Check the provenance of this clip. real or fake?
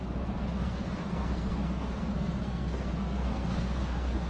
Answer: fake